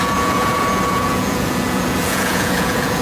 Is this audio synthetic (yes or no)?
yes